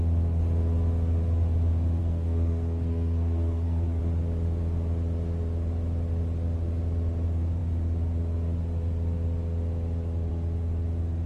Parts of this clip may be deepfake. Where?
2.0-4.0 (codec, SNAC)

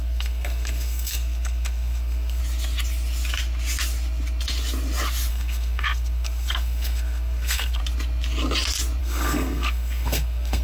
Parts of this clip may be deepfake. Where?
0.0-2.4 (codec, SNAC); 5.3-7.8; 9.0-10.6

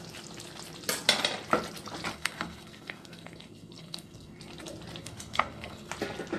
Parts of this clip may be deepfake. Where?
2.1-4.4 (codec, SNAC); 5.0-5.9

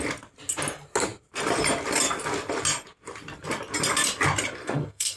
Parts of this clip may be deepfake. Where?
4.6-5.2 (codec, SNAC)